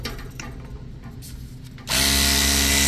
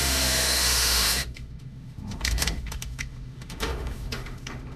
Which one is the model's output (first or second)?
second